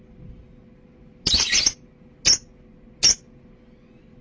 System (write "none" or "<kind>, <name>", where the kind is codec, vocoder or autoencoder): none